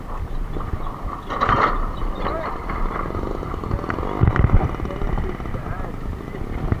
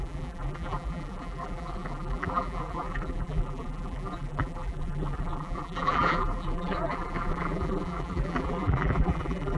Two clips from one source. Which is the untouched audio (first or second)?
first